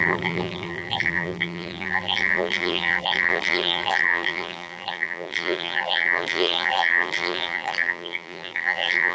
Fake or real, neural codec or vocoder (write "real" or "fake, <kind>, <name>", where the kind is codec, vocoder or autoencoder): fake, vocoder, BigVGAN v2